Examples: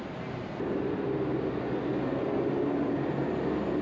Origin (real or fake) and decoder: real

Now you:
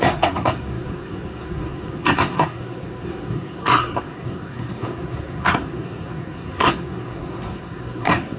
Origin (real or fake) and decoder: fake, codec, SNAC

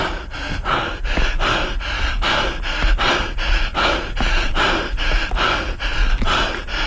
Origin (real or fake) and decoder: real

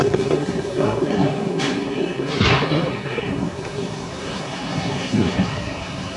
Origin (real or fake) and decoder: fake, codec, SNAC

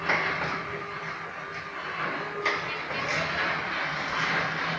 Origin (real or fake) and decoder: real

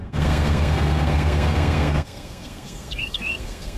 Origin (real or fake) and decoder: fake, codec, SNAC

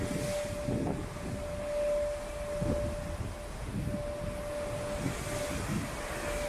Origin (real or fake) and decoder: real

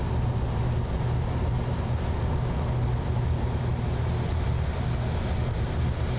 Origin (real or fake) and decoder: real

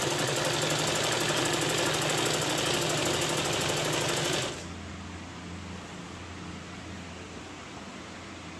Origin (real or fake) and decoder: real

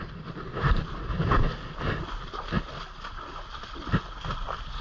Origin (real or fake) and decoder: real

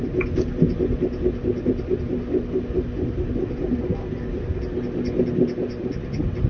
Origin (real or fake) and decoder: real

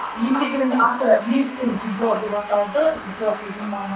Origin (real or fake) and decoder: fake, codec, SNAC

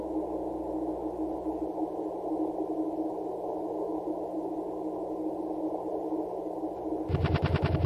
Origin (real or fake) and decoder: real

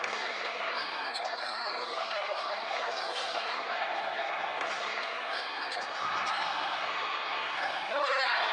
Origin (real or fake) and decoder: fake, codec, SNAC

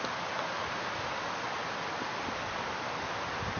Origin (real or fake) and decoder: real